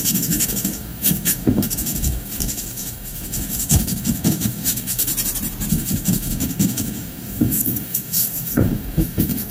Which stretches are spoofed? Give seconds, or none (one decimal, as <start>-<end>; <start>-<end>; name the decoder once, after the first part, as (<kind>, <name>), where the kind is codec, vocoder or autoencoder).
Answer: 0.0-5.1 (codec, DAC); 5.7-9.5